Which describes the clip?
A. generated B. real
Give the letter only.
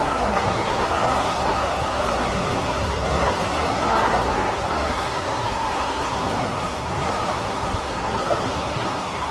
A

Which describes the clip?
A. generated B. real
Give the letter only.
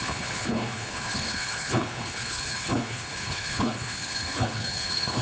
A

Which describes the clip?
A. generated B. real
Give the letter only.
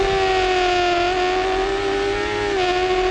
B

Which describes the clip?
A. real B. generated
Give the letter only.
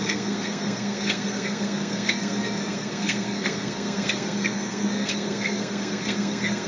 B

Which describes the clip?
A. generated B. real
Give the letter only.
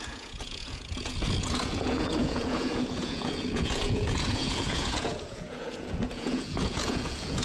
A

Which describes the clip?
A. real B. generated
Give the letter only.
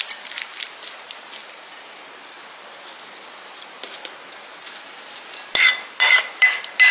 A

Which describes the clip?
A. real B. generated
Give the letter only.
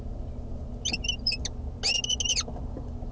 A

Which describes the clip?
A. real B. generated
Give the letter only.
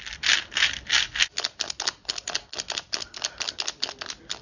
A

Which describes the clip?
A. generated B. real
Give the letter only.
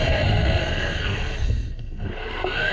A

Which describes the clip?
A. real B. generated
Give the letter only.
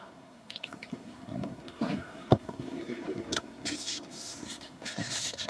B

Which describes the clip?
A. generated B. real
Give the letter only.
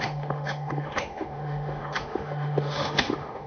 A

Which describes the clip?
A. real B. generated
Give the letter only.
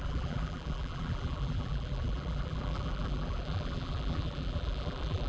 B